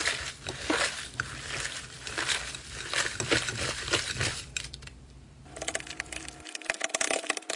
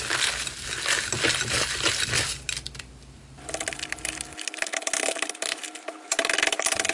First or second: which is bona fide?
second